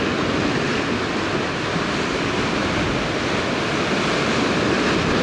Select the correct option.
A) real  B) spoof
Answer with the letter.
A